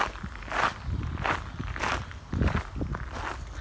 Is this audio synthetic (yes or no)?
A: no